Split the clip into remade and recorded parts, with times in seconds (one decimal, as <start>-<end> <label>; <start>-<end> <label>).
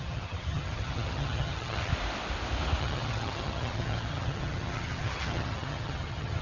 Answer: 0.0-1.9 remade; 1.9-2.8 recorded; 2.8-6.4 remade